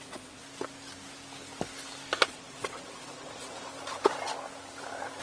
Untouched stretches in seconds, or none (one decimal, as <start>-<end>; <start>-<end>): 0.4-2.3; 3.7-5.2